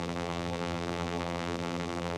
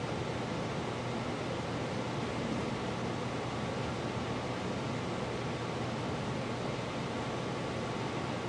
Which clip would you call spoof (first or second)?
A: first